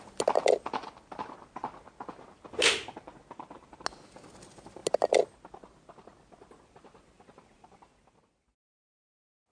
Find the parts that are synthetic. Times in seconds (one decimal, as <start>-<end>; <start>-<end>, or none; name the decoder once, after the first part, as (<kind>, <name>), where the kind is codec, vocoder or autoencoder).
none